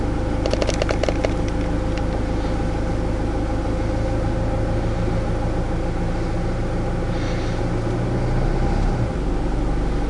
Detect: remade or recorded recorded